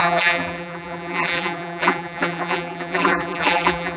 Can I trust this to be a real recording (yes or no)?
no